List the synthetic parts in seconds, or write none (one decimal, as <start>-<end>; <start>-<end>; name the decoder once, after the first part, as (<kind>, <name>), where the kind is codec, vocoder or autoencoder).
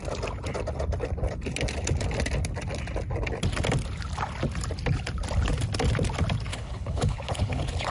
6.5-7.9 (codec, HILCodec)